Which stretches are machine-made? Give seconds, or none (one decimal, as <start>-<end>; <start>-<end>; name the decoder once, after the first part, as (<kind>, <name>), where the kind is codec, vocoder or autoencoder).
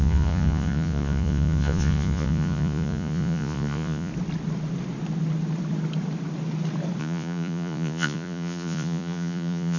0.0-4.1 (vocoder, Vocos); 7.0-9.8